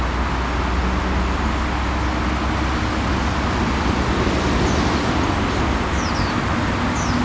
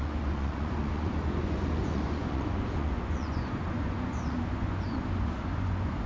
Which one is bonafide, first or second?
first